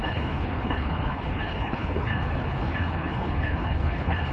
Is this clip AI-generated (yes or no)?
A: yes